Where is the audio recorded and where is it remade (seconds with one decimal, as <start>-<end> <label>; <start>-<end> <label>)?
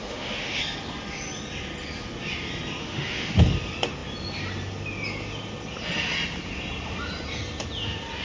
0.0-0.6 remade; 0.6-2.8 recorded; 2.8-3.4 remade; 3.4-8.2 recorded